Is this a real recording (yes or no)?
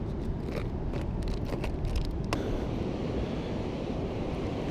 yes